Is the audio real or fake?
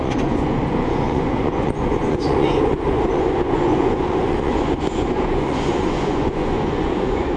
fake